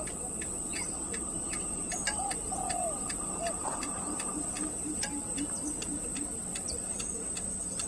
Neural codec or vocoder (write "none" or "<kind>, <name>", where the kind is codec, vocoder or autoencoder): vocoder, BigVGAN v2